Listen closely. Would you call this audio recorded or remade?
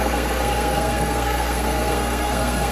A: remade